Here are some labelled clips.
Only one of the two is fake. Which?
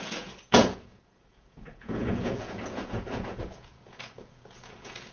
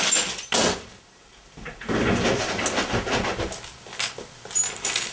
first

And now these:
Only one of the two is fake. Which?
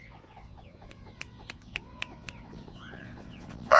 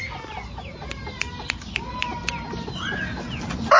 first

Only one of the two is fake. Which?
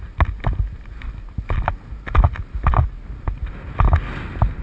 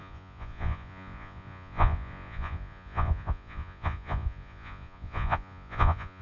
second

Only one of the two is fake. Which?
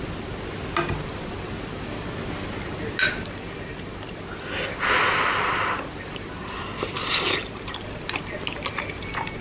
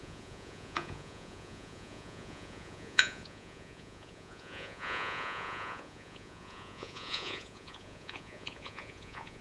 second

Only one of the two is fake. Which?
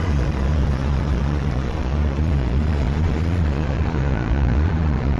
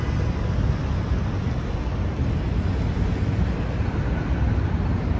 first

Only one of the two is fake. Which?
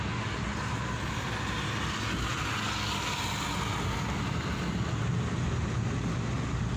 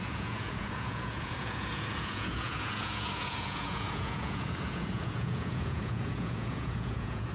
second